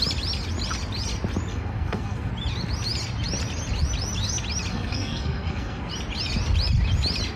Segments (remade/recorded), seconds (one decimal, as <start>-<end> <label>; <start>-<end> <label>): 0.0-1.5 recorded; 1.5-2.3 remade; 2.3-4.7 recorded; 4.7-5.9 remade; 5.9-7.4 recorded